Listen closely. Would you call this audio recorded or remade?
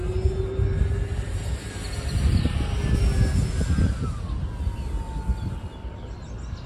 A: recorded